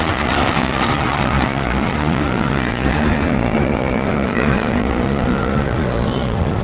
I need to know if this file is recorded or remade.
remade